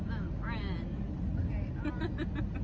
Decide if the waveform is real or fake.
real